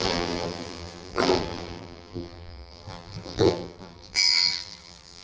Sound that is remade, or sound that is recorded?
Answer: remade